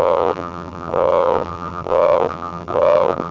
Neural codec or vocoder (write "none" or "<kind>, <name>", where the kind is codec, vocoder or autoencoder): vocoder, BigVGAN v2